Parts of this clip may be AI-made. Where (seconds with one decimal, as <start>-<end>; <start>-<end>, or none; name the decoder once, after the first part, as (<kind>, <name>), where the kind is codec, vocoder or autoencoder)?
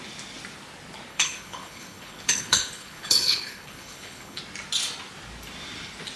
1.1-4.4 (codec, HILCodec)